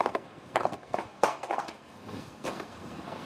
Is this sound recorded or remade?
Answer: remade